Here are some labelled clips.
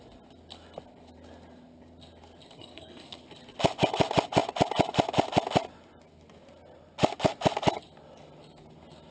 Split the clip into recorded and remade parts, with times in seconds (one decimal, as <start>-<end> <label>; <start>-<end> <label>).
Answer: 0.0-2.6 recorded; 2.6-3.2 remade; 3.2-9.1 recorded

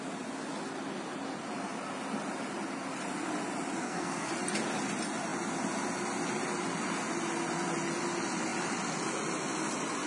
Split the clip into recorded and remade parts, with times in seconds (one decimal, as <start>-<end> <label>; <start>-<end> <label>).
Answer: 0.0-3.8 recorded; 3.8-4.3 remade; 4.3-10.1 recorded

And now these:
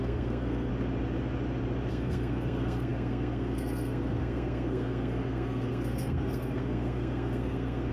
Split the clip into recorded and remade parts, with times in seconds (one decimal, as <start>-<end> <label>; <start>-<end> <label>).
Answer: 0.0-0.7 remade; 0.7-1.9 recorded; 1.9-7.9 remade

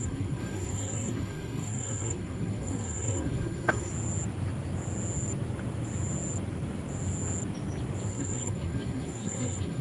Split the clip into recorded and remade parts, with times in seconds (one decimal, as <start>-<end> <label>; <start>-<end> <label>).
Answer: 0.0-3.9 remade; 3.9-8.1 recorded; 8.1-9.8 remade